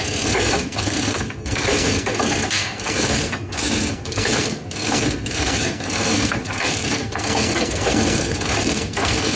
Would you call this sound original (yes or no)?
no